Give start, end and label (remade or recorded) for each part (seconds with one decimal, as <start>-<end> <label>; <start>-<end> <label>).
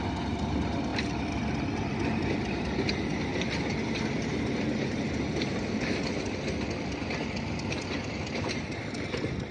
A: 0.0-9.5 recorded